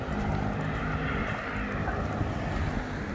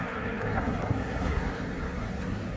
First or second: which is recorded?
first